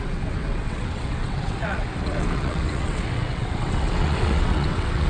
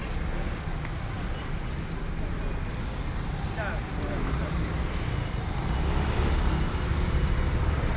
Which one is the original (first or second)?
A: second